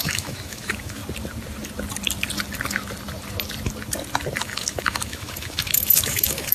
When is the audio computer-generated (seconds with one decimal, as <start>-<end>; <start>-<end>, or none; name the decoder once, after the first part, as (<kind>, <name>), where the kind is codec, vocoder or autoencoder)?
0.0-1.0 (autoencoder, DAC-VAE); 4.4-6.5

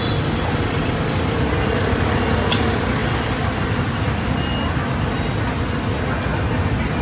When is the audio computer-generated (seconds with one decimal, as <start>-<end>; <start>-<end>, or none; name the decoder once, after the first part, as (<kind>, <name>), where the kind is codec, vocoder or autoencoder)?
none

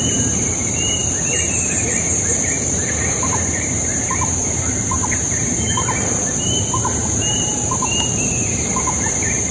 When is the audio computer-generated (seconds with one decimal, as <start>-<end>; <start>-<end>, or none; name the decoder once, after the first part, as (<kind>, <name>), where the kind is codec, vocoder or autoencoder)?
0.0-1.0 (vocoder, BigVGAN v2); 2.7-8.7

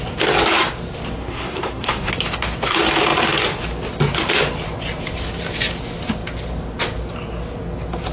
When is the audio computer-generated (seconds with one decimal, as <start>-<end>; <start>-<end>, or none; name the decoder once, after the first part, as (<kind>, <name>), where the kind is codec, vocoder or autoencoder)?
1.2-2.1 (codec, SNAC)